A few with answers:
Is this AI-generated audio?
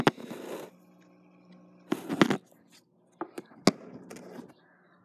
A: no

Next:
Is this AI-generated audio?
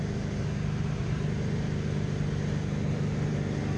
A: no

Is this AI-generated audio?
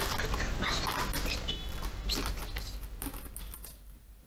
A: no